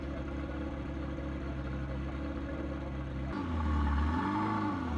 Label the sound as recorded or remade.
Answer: recorded